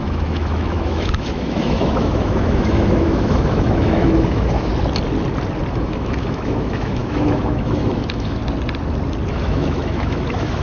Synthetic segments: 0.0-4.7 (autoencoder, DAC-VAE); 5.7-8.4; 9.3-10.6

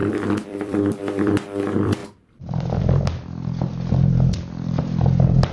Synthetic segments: 0.0-5.5 (vocoder, BigVGAN v2)

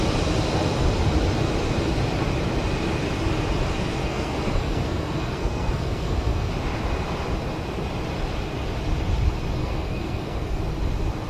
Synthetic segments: 4.0-6.5 (codec, SNAC); 9.6-10.6

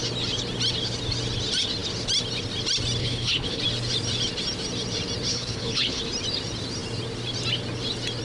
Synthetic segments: 3.0-3.6 (codec, HILCodec); 5.3-6.0

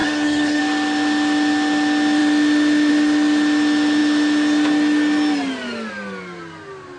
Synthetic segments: 0.0-0.6 (codec, SNAC)

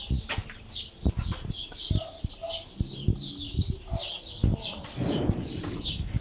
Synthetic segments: none

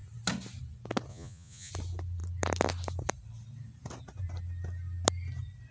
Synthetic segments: 1.1-1.7 (vocoder, Vocos)